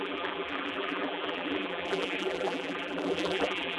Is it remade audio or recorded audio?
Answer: remade